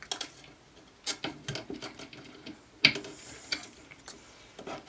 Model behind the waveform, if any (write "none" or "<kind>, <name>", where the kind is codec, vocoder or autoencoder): none